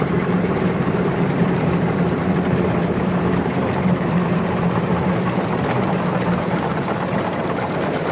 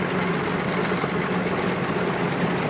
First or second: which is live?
second